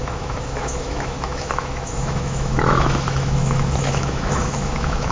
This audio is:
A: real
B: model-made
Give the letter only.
B